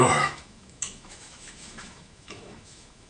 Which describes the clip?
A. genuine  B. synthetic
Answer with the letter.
B